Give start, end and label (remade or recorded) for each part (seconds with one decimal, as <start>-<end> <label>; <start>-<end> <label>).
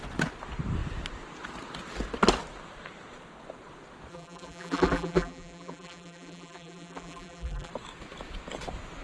0.0-4.1 recorded; 4.1-7.7 remade; 7.7-9.0 recorded